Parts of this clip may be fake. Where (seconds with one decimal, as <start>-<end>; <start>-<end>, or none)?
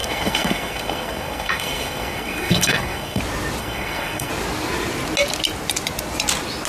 0.0-3.2; 3.6-4.3